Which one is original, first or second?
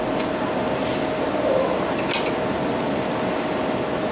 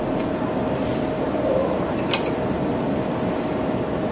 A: first